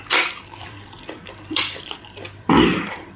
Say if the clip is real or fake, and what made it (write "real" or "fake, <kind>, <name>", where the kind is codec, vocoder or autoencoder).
fake, vocoder, BigVGAN v2